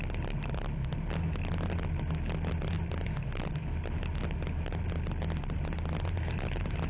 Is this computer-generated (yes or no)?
no